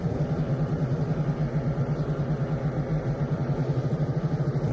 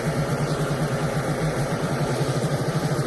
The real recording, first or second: first